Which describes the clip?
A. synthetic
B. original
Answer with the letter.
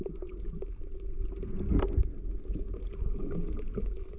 B